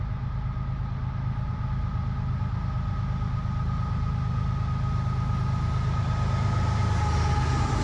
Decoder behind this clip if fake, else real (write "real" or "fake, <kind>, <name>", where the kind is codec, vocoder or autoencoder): real